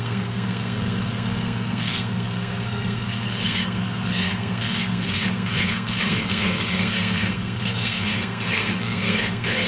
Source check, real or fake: fake